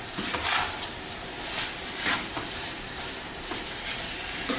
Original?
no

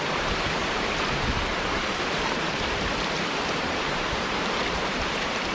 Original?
no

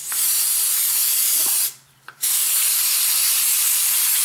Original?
no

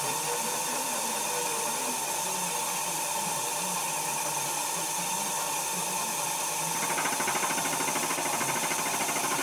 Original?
yes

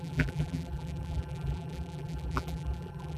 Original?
no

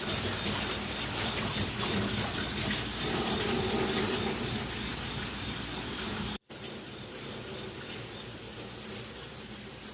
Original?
no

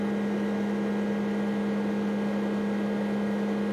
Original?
yes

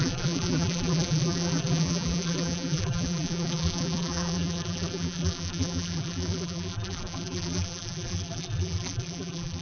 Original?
no